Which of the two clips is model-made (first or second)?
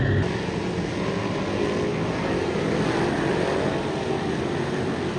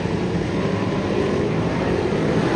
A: second